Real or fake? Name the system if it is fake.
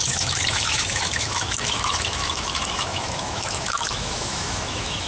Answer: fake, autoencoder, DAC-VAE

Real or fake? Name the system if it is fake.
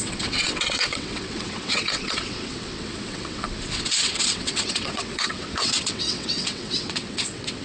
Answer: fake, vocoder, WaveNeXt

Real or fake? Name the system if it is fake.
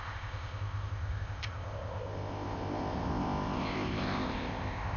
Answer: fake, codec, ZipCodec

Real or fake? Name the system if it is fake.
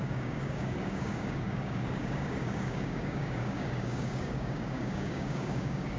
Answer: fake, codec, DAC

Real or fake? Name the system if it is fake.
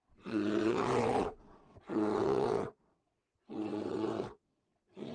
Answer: fake, vocoder, WaveNeXt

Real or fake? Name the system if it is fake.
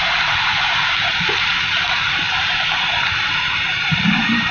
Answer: fake, vocoder, BigVGAN v2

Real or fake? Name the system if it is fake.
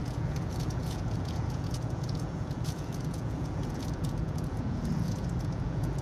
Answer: fake, vocoder, Vocos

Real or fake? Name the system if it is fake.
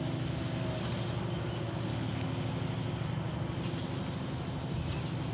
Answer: real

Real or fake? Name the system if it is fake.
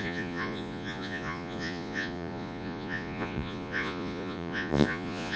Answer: fake, vocoder, Vocos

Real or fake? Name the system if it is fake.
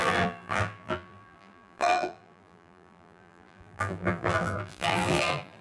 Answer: fake, vocoder, BigVGAN v2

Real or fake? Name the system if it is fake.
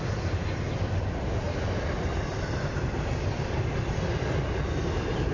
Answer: real